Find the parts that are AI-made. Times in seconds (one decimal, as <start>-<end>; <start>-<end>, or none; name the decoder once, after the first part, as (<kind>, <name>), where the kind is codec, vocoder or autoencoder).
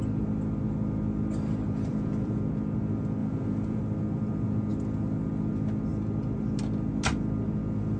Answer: 1.9-2.4 (vocoder, Vocos); 3.2-3.8